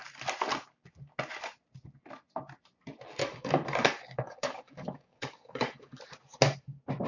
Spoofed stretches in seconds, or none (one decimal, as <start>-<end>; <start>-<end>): 3.2-6.0